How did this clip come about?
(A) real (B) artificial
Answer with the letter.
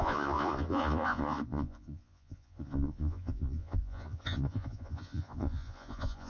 B